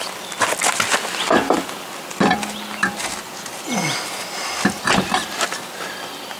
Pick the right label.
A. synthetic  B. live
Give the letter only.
B